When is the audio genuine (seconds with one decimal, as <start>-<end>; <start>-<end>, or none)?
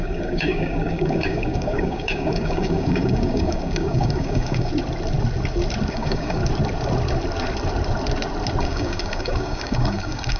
4.7-5.9; 6.4-8.6